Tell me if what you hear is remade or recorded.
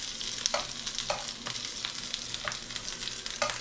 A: recorded